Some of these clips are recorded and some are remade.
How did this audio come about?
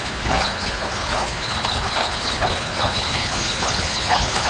remade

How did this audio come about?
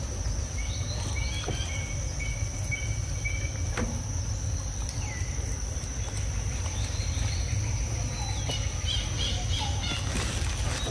recorded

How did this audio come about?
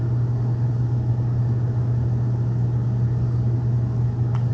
recorded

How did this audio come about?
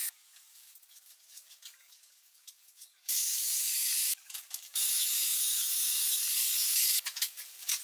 remade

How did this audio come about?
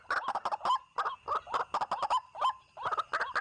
recorded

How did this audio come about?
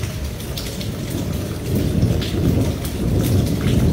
recorded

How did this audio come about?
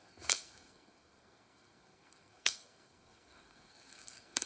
remade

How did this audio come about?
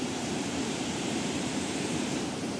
remade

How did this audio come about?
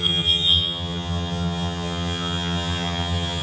remade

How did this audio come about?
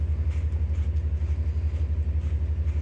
recorded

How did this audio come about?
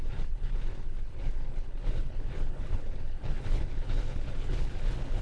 remade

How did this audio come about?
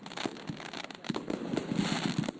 recorded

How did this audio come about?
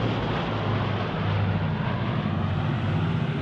recorded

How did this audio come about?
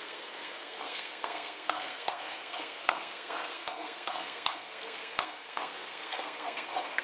remade